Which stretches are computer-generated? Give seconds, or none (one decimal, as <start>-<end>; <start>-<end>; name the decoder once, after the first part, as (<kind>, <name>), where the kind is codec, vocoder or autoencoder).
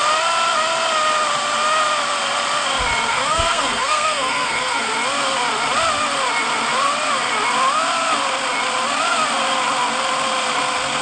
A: 3.1-4.9 (codec, SNAC)